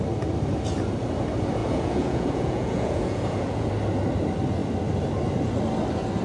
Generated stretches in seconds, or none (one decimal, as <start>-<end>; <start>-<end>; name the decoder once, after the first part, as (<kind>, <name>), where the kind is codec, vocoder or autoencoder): 1.6-3.7 (vocoder, Vocos)